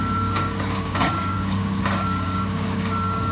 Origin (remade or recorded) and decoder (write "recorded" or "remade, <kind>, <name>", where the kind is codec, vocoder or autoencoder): remade, codec, DAC